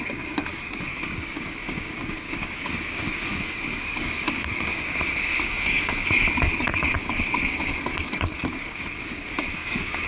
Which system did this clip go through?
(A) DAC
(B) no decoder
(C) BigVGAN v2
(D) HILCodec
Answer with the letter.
A